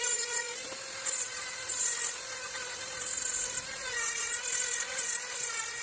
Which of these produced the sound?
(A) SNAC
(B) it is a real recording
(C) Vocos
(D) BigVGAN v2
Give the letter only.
B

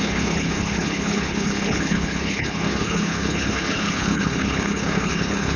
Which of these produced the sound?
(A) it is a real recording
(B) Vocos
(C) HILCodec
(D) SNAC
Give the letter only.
C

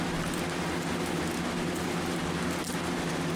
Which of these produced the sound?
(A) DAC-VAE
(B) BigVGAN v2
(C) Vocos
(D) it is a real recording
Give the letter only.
D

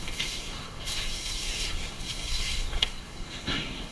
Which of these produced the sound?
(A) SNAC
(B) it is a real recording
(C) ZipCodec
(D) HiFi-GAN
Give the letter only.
A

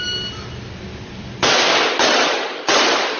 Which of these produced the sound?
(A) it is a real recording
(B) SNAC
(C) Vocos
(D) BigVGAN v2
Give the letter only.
A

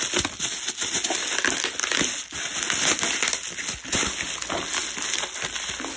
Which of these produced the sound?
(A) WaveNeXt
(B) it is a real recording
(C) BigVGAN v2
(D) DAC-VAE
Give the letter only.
B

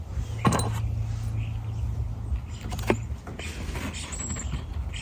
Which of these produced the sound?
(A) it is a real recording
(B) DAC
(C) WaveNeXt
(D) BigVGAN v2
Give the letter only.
A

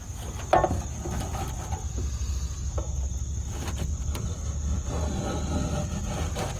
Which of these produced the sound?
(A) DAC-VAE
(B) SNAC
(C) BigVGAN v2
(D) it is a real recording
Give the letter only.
D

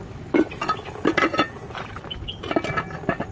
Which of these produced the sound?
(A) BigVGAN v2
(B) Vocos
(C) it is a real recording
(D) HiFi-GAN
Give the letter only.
C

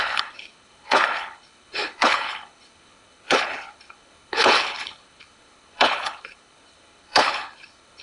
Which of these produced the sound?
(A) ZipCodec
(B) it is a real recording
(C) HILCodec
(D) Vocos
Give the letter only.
C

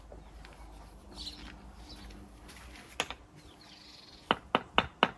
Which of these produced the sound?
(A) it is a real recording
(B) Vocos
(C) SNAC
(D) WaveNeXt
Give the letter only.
A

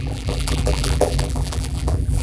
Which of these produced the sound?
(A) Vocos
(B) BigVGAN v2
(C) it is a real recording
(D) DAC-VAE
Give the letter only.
B